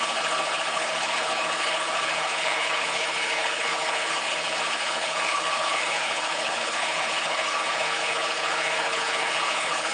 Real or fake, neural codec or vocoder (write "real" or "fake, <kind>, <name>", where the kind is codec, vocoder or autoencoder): fake, codec, HILCodec